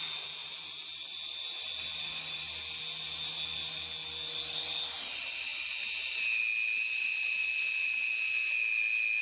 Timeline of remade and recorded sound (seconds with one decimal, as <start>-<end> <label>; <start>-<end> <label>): 0.0-9.2 recorded